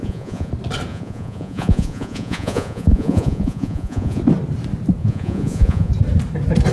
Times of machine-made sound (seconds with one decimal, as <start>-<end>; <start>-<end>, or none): 0.0-0.5; 0.9-4.2; 5.0-5.9